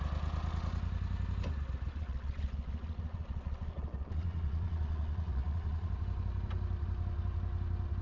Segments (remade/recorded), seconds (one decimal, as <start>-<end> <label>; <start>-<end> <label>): 0.0-1.9 recorded; 1.9-5.9 remade; 5.9-8.0 recorded